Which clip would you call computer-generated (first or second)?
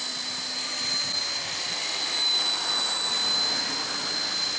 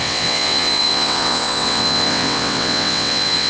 second